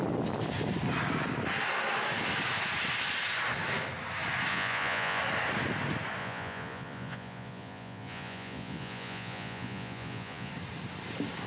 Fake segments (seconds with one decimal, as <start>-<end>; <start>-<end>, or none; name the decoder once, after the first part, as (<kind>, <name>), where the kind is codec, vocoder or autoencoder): 4.5-5.2 (vocoder, Vocos); 6.2-10.5

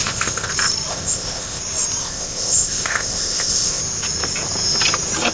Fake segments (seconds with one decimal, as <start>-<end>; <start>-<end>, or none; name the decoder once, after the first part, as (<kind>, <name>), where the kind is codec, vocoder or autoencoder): 0.0-0.5 (codec, ZipCodec); 0.9-1.6; 2.0-3.8

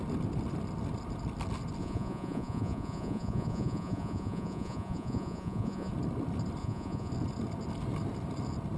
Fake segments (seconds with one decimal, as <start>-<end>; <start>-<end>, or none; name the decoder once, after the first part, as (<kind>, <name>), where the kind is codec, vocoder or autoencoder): 1.8-5.9 (vocoder, Vocos); 6.6-7.1

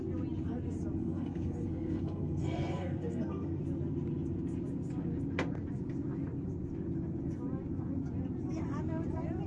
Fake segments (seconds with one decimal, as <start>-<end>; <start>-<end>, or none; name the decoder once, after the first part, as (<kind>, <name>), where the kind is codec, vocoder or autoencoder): 1.0-3.6 (codec, SNAC)

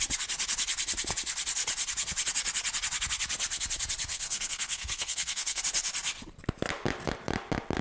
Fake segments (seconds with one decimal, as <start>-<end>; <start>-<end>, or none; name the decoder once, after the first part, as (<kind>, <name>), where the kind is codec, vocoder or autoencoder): 4.1-5.6 (codec, SNAC)

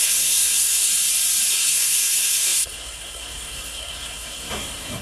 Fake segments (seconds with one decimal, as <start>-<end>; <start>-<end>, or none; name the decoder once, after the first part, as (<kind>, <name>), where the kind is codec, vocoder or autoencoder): 0.0-0.9 (codec, SNAC); 1.5-5.0

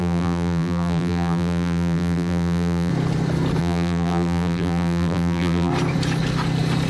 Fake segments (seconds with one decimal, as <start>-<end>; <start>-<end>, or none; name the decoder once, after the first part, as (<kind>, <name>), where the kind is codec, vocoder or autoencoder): 0.0-2.9 (vocoder, BigVGAN v2); 3.6-5.7

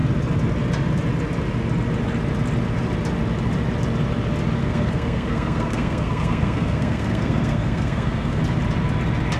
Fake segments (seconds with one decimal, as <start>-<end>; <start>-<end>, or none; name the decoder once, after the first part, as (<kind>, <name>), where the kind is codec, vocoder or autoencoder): 4.6-8.4 (codec, SNAC)